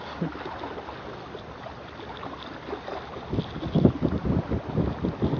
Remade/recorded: recorded